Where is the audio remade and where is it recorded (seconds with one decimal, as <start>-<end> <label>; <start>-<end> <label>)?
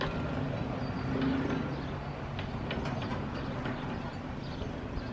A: 0.0-5.1 recorded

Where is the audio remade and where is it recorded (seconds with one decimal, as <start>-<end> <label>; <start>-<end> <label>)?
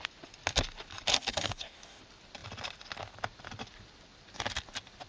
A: 0.0-1.1 recorded; 1.1-2.0 remade; 2.0-5.1 recorded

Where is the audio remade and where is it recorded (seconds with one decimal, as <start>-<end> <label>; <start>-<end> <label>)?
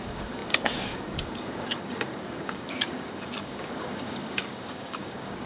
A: 0.0-5.5 remade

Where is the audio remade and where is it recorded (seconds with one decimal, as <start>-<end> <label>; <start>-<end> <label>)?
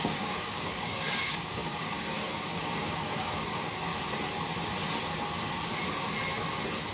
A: 0.0-3.9 remade; 3.9-6.9 recorded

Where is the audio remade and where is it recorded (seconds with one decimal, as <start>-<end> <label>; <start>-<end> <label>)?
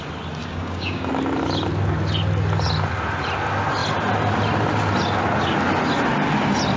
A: 0.0-0.4 recorded; 0.4-1.1 remade; 1.1-6.8 recorded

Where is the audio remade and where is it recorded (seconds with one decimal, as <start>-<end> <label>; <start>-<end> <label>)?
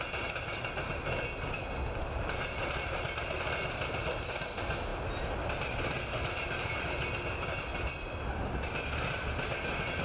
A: 0.0-10.0 recorded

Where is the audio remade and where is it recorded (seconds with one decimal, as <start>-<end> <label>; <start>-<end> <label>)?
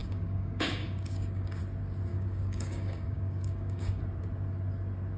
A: 0.0-1.6 remade; 1.6-2.1 recorded; 2.1-4.0 remade; 4.0-5.2 recorded